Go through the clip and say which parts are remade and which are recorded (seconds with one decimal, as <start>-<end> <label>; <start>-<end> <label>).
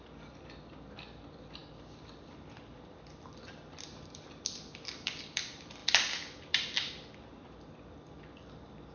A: 0.0-8.9 remade